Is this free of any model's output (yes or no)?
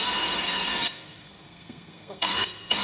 no